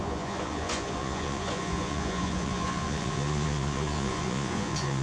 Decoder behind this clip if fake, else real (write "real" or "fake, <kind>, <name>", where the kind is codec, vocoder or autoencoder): fake, vocoder, Vocos